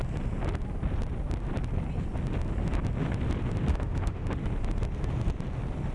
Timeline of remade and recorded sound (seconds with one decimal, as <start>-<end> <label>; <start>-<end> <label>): 0.0-3.7 recorded; 3.7-4.3 remade; 4.3-5.9 recorded